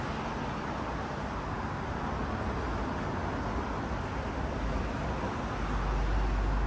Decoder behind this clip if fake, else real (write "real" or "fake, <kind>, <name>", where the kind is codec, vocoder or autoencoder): real